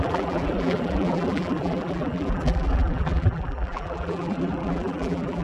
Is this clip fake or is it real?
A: fake